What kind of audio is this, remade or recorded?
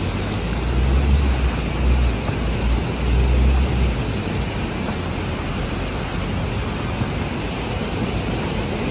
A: recorded